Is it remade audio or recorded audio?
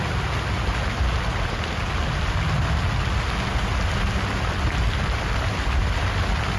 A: recorded